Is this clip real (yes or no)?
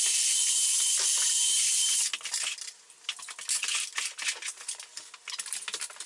yes